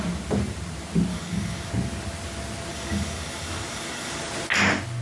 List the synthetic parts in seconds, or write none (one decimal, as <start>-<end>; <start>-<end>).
1.1-1.7; 2.7-4.2